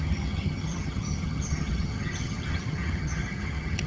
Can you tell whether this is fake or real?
fake